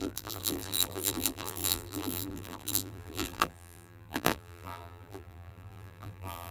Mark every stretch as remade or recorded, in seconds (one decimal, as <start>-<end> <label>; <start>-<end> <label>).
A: 0.0-6.5 remade